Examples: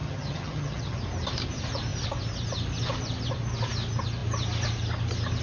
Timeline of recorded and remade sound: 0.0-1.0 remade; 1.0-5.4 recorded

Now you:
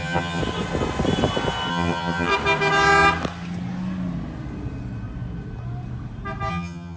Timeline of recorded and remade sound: 0.0-0.4 remade; 0.4-1.7 recorded; 1.7-2.3 remade; 2.3-6.5 recorded; 6.5-7.0 remade

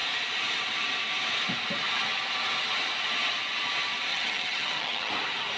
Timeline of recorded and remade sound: 0.0-4.1 recorded; 4.1-5.1 remade; 5.1-5.6 recorded

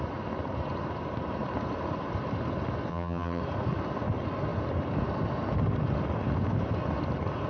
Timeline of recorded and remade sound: 0.0-2.9 recorded; 2.9-3.4 remade; 3.4-7.5 recorded

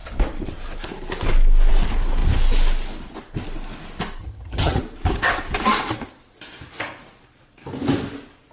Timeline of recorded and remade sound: 0.0-4.2 recorded; 4.2-4.8 remade; 4.8-8.5 recorded

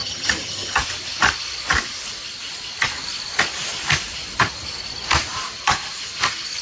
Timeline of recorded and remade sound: 0.0-0.8 remade; 0.8-6.6 recorded

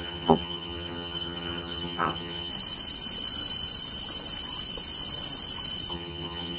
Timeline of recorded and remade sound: 0.0-2.5 remade; 2.5-5.9 recorded; 5.9-6.6 remade

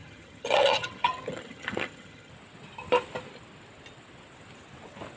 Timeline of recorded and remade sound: 0.0-2.3 remade; 2.3-5.2 recorded